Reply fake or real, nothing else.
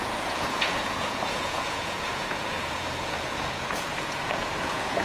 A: fake